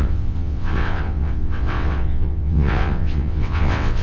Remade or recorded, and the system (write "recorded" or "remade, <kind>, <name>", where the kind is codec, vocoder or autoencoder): remade, vocoder, WaveNeXt